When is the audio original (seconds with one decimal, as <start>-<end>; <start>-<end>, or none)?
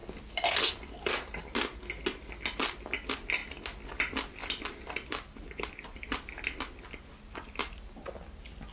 0.0-8.7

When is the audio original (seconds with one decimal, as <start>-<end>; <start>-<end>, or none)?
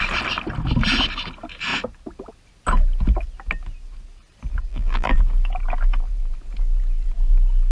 0.0-4.7; 5.2-7.7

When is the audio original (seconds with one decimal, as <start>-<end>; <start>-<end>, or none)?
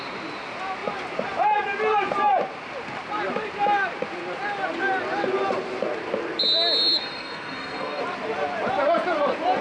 0.0-7.0; 8.0-9.6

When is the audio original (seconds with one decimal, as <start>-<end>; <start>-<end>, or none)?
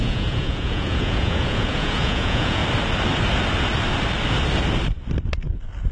2.6-5.9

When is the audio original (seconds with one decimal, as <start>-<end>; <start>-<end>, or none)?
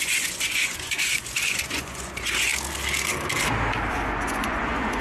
2.5-3.9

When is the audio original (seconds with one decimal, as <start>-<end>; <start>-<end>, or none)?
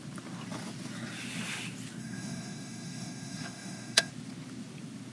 0.0-2.0; 4.1-5.1